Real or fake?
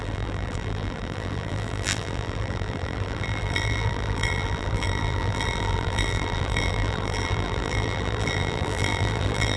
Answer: fake